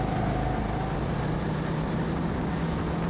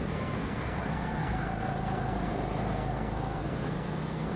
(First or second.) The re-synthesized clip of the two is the second